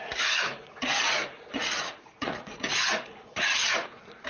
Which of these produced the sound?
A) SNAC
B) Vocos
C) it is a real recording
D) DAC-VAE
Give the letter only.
B